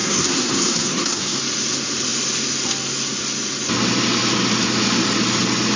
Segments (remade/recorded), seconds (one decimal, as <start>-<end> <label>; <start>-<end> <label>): 0.0-1.4 remade; 1.4-5.8 recorded